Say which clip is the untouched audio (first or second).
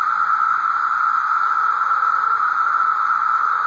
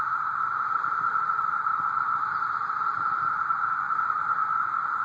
first